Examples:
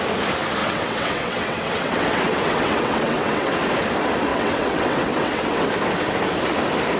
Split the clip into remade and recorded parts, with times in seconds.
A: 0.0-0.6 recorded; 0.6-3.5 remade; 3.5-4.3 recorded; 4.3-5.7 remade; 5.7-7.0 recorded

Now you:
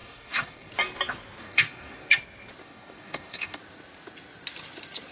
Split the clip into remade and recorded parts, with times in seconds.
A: 0.0-0.7 remade; 0.7-1.4 recorded; 1.4-2.1 remade; 2.1-2.6 recorded; 2.6-3.6 remade; 3.6-5.1 recorded

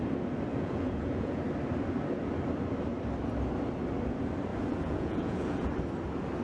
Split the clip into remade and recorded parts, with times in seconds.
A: 0.0-0.5 recorded; 0.5-1.4 remade; 1.4-4.5 recorded; 4.5-5.7 remade; 5.7-6.4 recorded

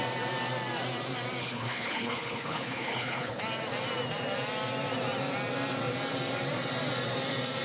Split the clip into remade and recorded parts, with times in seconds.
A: 0.0-1.4 recorded; 1.4-3.4 remade; 3.4-7.6 recorded